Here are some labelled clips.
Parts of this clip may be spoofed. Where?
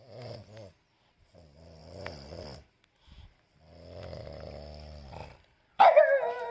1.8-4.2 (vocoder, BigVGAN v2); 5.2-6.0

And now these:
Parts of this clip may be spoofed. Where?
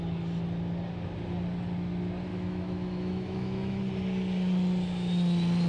2.3-3.8 (autoencoder, DAC-VAE)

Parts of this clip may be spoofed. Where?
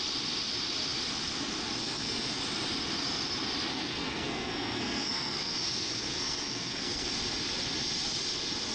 1.8-2.4 (codec, SNAC); 3.7-7.1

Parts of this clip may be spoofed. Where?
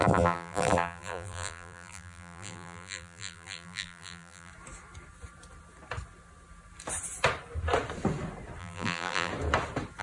0.0-4.5 (vocoder, BigVGAN v2); 8.6-9.3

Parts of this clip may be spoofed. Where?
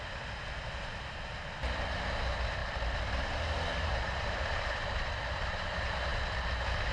none